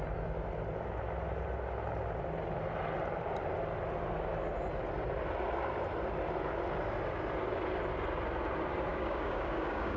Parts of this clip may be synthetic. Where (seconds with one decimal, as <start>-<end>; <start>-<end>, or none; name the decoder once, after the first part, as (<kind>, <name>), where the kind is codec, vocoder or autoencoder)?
8.9-10.0 (codec, DAC)